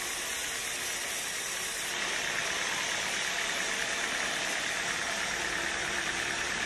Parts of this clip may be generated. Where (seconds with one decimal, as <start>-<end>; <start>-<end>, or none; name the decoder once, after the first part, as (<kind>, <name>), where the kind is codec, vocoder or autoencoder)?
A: 2.4-6.7 (vocoder, BigVGAN v2)